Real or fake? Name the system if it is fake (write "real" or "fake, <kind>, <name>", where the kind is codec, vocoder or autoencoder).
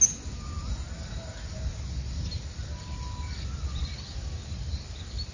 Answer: real